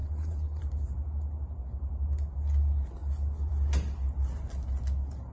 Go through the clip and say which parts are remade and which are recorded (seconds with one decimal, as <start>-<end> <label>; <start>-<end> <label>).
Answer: 0.0-0.6 remade; 0.6-5.3 recorded